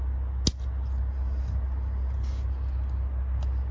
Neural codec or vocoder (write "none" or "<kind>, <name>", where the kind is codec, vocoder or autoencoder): none